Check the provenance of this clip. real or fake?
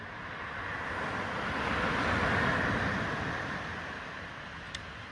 real